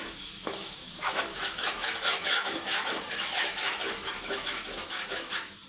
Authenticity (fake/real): fake